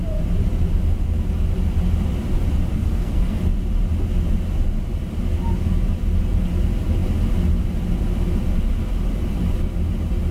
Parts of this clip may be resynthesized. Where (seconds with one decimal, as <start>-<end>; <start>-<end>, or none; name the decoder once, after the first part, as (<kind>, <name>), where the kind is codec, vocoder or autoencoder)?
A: 2.7-3.4 (codec, SNAC)